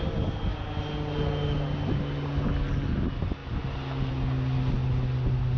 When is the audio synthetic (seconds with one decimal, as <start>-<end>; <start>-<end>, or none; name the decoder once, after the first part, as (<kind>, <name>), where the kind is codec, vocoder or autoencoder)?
none